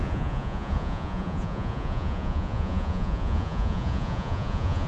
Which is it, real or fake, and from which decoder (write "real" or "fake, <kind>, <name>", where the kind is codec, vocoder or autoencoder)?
fake, vocoder, Vocos